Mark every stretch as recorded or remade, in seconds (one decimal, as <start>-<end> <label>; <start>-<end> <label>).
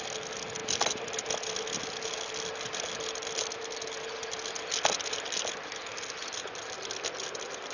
0.0-7.7 recorded